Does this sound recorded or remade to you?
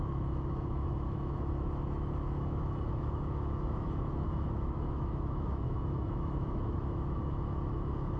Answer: remade